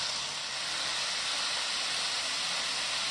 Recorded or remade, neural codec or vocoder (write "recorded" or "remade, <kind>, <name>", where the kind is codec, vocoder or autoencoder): recorded